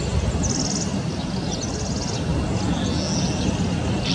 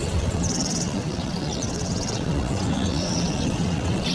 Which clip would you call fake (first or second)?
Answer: second